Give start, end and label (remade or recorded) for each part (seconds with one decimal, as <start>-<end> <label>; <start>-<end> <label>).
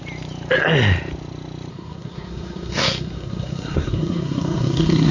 0.0-1.7 recorded; 1.7-5.1 remade